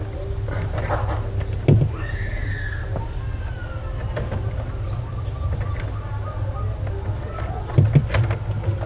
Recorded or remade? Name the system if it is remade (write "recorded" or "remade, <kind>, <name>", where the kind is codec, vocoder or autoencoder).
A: recorded